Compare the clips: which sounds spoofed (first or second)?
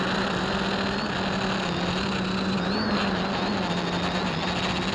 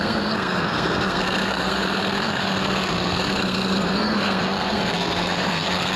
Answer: second